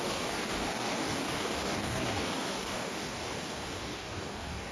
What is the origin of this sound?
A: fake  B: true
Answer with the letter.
A